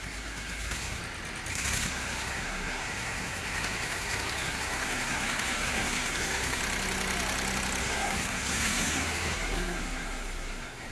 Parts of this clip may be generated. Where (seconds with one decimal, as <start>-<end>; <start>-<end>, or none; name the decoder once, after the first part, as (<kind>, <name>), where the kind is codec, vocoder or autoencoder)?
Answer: 0.0-1.0 (codec, SNAC); 1.5-6.6; 7.8-10.9